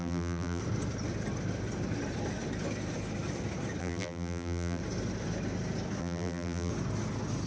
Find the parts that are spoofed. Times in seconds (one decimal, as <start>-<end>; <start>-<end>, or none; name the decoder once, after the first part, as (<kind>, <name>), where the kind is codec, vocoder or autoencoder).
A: 0.0-0.6 (vocoder, BigVGAN v2); 3.8-4.8; 6.0-6.7